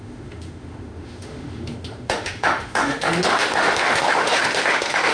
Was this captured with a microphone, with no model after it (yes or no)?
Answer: no